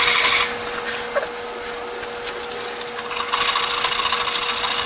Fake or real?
real